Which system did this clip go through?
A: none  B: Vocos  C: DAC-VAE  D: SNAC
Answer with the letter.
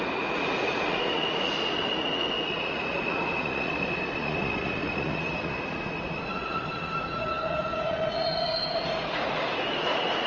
B